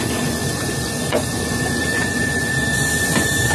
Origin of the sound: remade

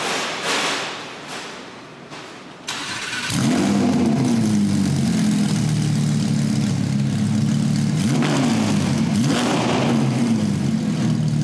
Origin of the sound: recorded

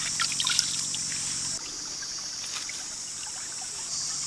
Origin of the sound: recorded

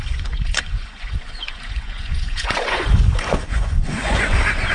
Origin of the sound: remade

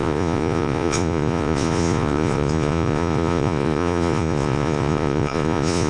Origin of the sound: remade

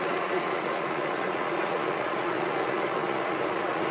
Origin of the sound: remade